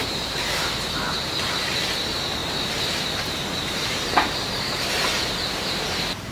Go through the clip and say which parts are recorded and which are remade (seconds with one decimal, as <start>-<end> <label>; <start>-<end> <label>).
0.0-0.6 remade; 0.6-2.4 recorded; 2.4-6.3 remade